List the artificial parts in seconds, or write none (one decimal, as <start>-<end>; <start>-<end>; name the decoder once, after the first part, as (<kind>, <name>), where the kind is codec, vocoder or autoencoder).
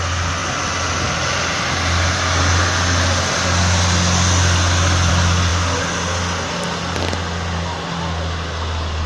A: none